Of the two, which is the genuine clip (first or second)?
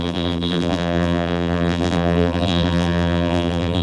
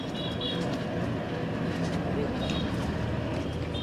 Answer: second